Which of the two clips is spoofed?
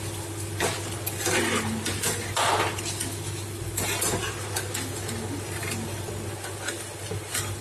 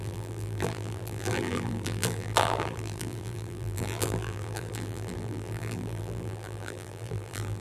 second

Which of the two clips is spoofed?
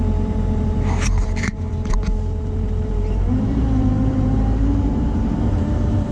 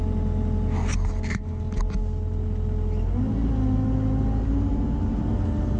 first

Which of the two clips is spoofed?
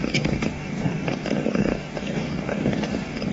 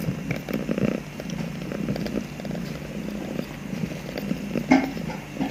first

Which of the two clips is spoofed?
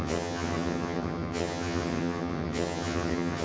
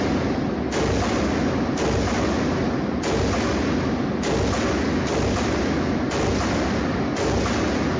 first